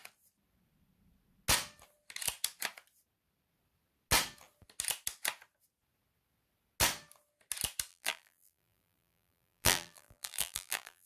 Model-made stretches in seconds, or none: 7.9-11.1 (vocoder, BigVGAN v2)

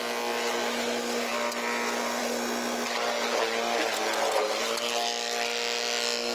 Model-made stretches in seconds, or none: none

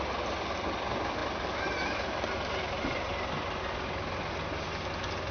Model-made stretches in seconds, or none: none